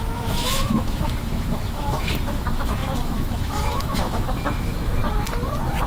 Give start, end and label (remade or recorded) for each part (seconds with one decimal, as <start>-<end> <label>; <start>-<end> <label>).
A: 0.0-5.0 remade; 5.0-5.9 recorded